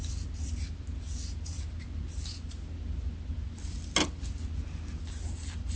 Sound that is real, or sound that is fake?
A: real